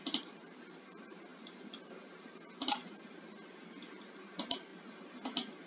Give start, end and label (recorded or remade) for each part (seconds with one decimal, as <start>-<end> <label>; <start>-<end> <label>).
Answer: 0.0-2.8 remade; 2.8-3.9 recorded; 3.9-4.7 remade; 4.7-5.7 recorded